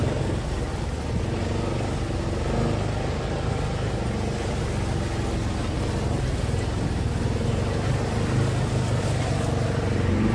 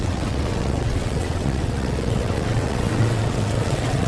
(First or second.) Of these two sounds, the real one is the first